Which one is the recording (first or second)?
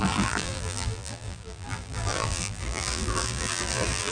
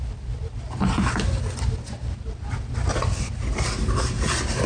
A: second